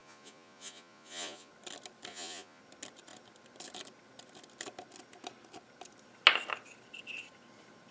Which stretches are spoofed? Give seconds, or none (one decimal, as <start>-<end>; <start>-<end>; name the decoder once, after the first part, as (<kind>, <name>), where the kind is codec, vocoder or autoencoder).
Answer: 0.0-1.5 (vocoder, Vocos); 2.1-2.6